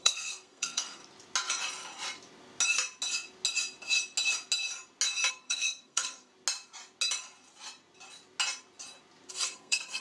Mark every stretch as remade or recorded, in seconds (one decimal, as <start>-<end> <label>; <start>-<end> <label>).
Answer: 0.0-1.0 remade; 1.0-5.3 recorded; 5.3-6.3 remade; 6.3-9.3 recorded; 9.3-10.0 remade